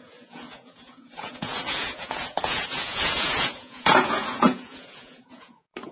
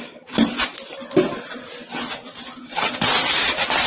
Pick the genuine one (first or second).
second